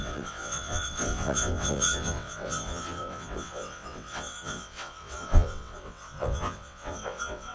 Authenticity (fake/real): fake